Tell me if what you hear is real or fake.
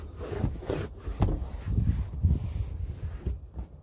real